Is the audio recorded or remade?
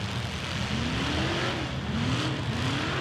recorded